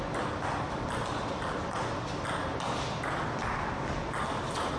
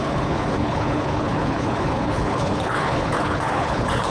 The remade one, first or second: second